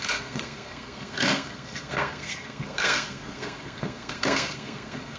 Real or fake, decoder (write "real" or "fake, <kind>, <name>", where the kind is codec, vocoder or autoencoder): fake, codec, SNAC